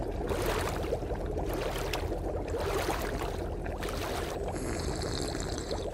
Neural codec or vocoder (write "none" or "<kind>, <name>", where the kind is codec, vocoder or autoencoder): none